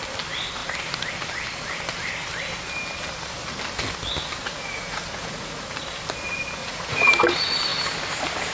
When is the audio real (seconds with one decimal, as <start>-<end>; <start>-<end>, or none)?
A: 0.0-4.4; 5.7-6.6; 7.1-8.5